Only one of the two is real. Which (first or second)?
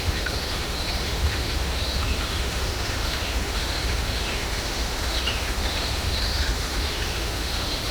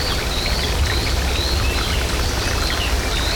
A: second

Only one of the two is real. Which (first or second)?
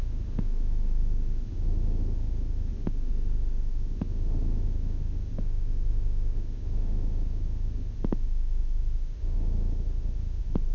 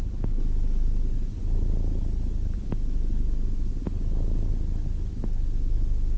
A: second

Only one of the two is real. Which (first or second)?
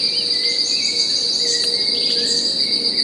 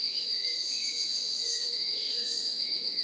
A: first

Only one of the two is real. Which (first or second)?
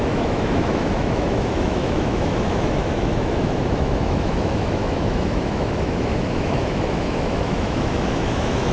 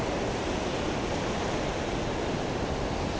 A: second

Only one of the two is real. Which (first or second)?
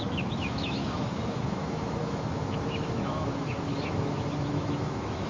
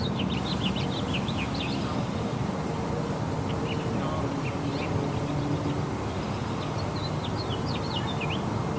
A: second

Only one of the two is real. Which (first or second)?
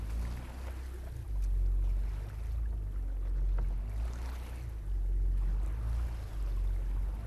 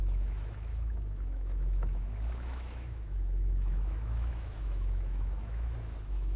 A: first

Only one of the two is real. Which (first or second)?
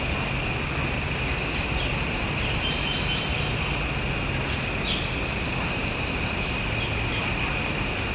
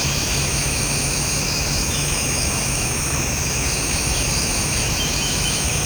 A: first